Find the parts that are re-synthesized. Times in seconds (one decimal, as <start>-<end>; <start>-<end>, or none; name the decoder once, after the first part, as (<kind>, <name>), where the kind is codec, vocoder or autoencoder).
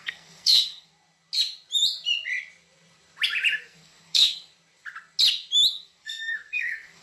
0.0-0.9 (codec, SNAC); 3.6-4.5; 5.7-7.0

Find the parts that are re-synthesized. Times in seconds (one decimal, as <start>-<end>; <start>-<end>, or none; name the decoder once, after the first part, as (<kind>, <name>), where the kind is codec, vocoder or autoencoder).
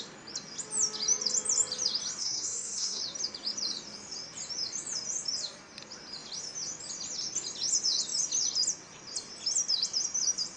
2.2-3.0 (codec, SNAC)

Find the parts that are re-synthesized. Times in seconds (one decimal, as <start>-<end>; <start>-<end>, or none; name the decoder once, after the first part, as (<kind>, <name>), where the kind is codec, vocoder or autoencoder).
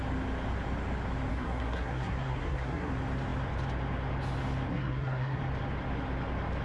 1.3-2.9 (codec, SNAC); 4.7-5.4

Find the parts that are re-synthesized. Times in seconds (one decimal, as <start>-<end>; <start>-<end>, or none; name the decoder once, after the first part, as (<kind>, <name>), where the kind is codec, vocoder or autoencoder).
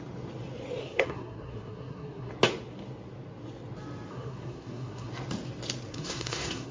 0.8-2.3 (codec, SNAC); 4.1-5.1; 5.9-6.7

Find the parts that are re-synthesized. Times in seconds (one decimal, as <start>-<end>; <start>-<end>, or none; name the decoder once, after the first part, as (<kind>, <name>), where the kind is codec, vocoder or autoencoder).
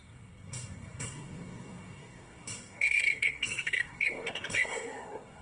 0.0-5.4 (codec, SNAC)